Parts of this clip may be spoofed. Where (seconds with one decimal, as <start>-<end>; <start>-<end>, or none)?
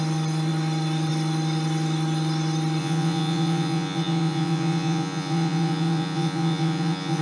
2.8-7.2